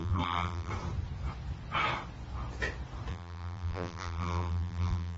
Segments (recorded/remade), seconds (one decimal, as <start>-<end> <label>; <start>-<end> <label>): 0.0-0.7 remade; 0.7-3.1 recorded; 3.1-5.2 remade